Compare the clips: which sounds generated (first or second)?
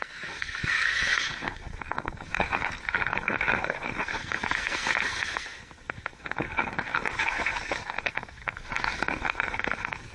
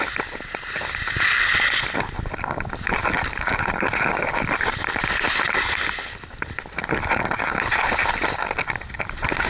first